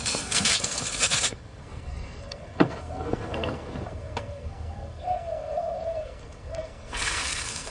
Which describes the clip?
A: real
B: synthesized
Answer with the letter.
B